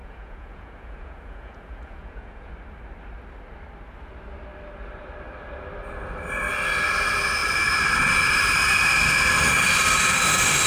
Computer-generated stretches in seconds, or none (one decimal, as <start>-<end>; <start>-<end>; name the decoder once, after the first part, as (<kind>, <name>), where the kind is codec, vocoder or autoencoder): 0.0-2.5 (vocoder, Vocos)